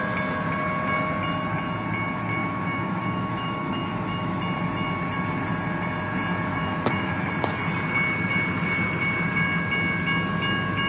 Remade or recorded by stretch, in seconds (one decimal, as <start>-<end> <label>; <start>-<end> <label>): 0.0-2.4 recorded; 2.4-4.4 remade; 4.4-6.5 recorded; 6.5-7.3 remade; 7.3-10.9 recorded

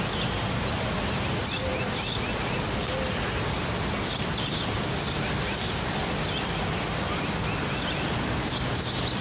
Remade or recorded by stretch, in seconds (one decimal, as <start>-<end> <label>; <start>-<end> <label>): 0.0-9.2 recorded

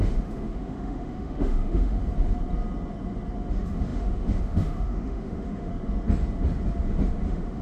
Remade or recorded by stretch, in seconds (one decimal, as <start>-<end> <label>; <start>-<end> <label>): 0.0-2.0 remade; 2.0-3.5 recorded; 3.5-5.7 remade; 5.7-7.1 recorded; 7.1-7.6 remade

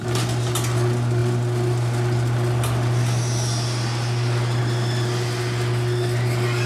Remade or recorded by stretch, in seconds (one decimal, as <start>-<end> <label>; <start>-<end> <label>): 0.0-6.7 recorded

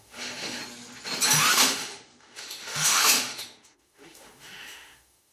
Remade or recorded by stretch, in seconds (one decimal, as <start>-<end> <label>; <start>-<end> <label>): 0.0-0.6 remade; 0.6-1.5 recorded; 1.5-5.3 remade

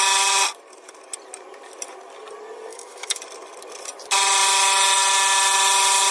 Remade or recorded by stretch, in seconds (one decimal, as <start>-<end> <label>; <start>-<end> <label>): 0.0-2.7 recorded; 2.7-3.2 remade; 3.2-6.1 recorded

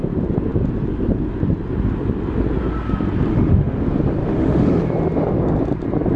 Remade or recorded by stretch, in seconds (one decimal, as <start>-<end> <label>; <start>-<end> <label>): 0.0-3.3 recorded; 3.3-3.8 remade; 3.8-4.2 recorded; 4.2-4.8 remade; 4.8-6.2 recorded

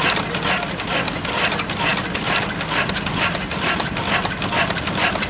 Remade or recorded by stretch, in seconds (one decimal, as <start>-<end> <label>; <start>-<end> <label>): 0.0-5.3 recorded